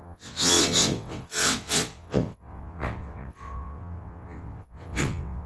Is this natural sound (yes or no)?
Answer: no